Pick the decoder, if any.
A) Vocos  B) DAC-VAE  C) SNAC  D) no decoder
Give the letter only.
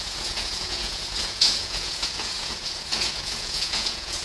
A